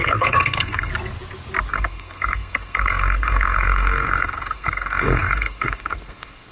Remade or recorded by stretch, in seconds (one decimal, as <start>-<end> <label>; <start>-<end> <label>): 0.0-0.9 remade; 0.9-1.7 recorded; 1.7-6.5 remade